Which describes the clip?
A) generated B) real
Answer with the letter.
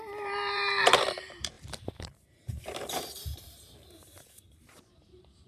A